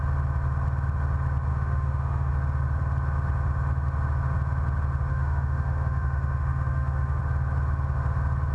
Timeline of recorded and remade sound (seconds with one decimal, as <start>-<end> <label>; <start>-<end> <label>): 0.0-1.5 recorded; 1.5-2.3 remade; 2.3-5.1 recorded; 5.1-7.2 remade; 7.2-8.5 recorded